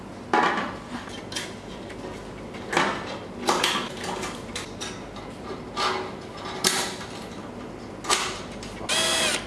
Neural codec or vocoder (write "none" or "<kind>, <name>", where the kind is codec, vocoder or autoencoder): none